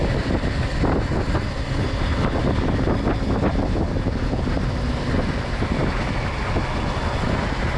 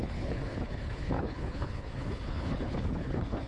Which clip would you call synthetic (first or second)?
second